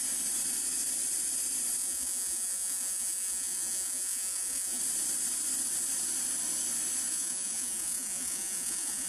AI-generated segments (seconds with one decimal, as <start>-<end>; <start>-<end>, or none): 1.8-4.8; 7.1-9.1